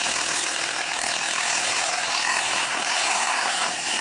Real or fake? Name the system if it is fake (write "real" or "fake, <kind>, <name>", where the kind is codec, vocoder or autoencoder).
fake, codec, SNAC